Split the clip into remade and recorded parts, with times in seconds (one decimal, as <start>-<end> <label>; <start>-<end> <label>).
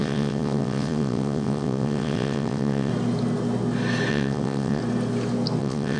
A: 0.0-2.9 remade; 2.9-4.1 recorded; 4.1-4.8 remade; 4.8-5.6 recorded; 5.6-6.0 remade